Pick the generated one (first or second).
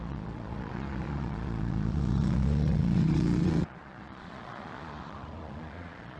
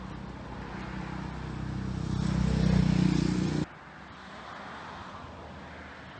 first